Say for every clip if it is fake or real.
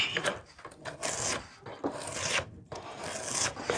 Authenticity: real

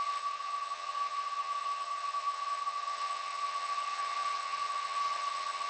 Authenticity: fake